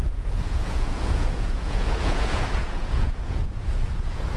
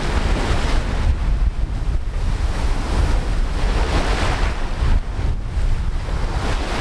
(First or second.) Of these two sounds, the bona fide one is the second